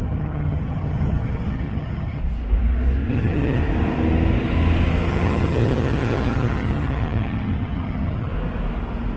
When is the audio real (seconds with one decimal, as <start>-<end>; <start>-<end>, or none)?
2.2-3.1; 3.6-5.1; 8.3-9.2